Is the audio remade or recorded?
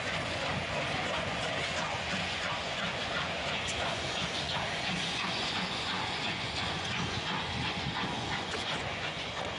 remade